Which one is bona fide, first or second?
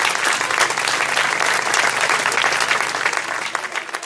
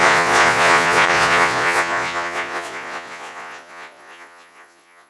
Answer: first